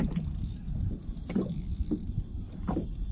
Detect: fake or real real